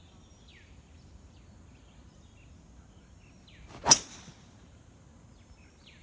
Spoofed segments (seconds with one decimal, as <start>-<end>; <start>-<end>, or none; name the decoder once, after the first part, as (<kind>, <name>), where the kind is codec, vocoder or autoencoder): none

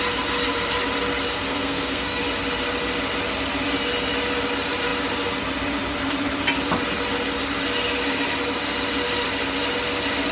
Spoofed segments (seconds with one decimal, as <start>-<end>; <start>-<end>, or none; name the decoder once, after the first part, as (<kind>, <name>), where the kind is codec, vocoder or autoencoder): 1.5-2.2 (codec, SNAC)

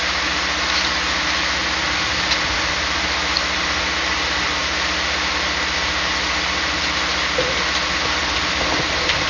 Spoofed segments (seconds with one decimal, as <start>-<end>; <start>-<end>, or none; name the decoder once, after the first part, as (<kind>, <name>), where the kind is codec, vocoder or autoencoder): none